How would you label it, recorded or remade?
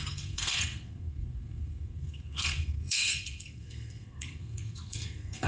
remade